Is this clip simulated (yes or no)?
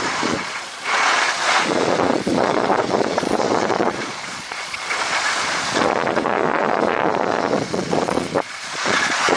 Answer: yes